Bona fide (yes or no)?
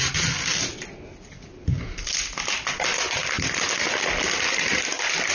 yes